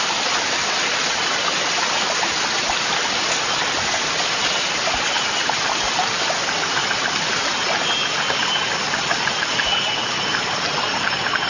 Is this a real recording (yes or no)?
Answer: yes